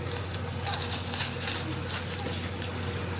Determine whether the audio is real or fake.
real